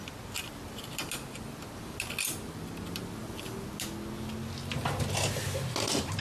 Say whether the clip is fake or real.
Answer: real